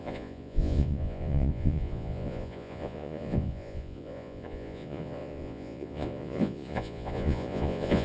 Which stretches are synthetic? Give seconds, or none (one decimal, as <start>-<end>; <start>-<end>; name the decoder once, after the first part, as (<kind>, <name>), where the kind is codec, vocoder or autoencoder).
0.0-8.0 (vocoder, Vocos)